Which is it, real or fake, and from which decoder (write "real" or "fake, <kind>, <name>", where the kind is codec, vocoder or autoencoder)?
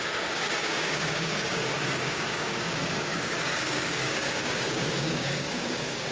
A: fake, codec, DAC